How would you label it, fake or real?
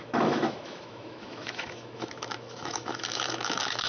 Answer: fake